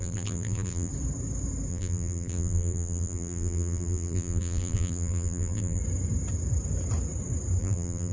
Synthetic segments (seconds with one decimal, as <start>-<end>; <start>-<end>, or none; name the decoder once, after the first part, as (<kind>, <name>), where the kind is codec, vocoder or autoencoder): 0.0-0.9 (vocoder, BigVGAN v2); 1.7-5.8; 7.6-8.1